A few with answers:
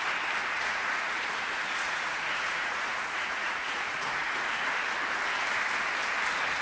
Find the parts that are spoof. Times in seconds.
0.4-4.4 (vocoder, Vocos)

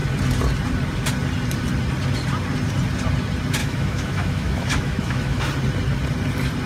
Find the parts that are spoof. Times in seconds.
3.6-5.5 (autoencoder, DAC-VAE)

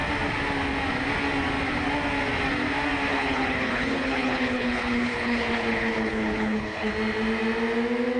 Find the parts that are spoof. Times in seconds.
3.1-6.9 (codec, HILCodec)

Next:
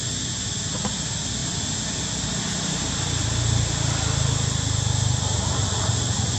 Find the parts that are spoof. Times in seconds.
1.4-3.2 (vocoder, BigVGAN v2)